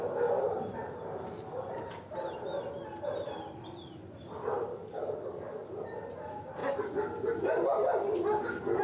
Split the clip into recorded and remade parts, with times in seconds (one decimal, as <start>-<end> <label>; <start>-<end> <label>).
0.0-4.7 recorded; 4.7-5.7 remade; 5.7-8.8 recorded